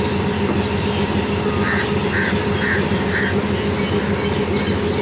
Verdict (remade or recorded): recorded